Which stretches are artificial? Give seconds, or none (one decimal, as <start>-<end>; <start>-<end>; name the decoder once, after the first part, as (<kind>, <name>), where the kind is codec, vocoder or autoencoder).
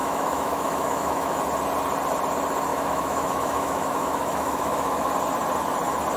0.0-1.4 (autoencoder, DAC-VAE); 2.7-5.1